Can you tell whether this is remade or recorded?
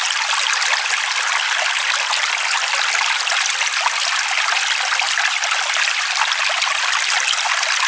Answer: recorded